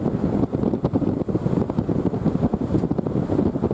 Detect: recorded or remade recorded